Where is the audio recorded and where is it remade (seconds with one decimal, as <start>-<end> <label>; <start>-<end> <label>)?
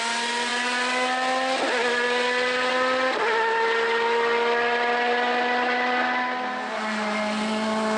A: 0.0-8.0 recorded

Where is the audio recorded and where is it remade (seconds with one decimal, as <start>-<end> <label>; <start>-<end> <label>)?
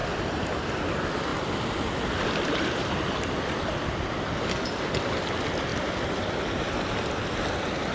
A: 0.0-7.9 recorded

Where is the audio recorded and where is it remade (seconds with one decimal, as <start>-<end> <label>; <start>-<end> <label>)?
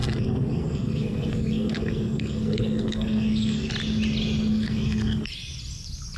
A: 0.0-3.7 remade; 3.7-4.5 recorded; 4.5-5.3 remade; 5.3-6.2 recorded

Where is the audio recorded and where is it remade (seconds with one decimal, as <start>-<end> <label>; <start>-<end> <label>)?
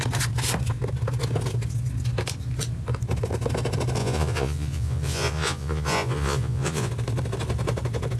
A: 0.0-4.0 recorded; 4.0-6.9 remade; 6.9-8.2 recorded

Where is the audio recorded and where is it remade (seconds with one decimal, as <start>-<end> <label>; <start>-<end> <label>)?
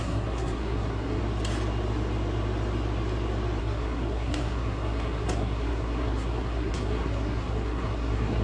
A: 0.0-1.2 remade; 1.2-3.6 recorded; 3.6-8.4 remade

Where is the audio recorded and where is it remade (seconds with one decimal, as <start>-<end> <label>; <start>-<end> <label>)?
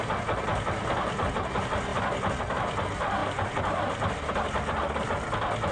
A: 0.0-0.5 recorded; 0.5-1.3 remade; 1.3-1.9 recorded; 1.9-2.4 remade; 2.4-3.2 recorded; 3.2-4.6 remade; 4.6-5.7 recorded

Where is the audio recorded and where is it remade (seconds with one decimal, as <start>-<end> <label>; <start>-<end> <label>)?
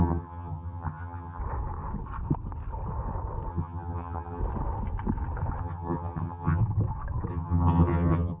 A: 0.0-1.4 remade; 1.4-3.5 recorded; 3.5-4.4 remade; 4.4-5.6 recorded; 5.6-6.6 remade; 6.6-7.3 recorded; 7.3-8.4 remade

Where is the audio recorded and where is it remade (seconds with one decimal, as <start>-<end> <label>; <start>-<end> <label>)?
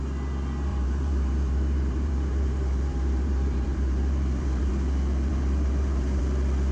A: 0.0-0.7 recorded; 0.7-4.7 remade; 4.7-5.3 recorded; 5.3-6.2 remade; 6.2-6.7 recorded